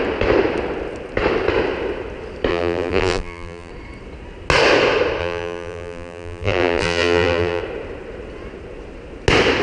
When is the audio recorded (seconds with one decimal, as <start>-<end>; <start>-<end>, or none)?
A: 0.0-2.5; 3.7-5.2; 7.6-9.6